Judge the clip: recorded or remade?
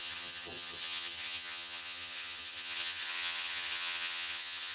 remade